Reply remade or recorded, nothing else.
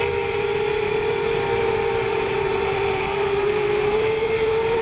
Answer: remade